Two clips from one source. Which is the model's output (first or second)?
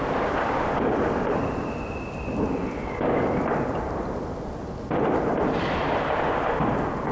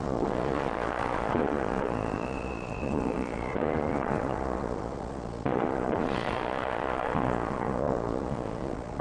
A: second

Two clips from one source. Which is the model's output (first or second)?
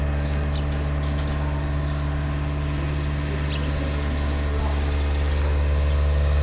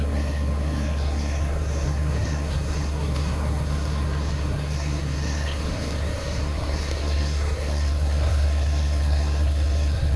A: second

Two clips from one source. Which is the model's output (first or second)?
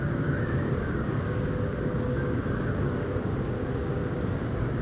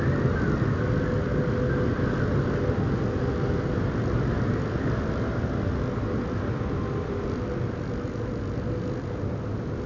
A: first